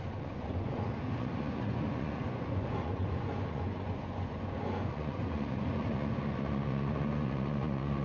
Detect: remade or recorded remade